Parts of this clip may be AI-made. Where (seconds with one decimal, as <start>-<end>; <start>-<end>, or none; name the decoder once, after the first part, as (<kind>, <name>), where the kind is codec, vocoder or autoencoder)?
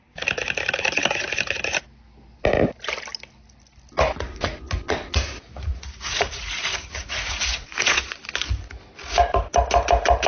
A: 4.1-8.2 (vocoder, Vocos)